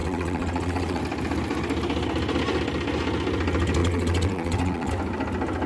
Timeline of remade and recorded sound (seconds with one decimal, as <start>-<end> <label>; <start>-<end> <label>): 0.0-1.0 remade; 1.0-3.8 recorded; 3.8-4.9 remade; 4.9-5.7 recorded